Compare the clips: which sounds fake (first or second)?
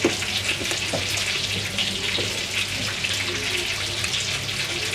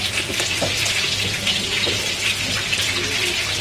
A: second